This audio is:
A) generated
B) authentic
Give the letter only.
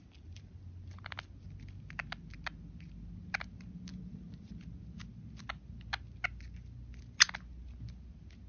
B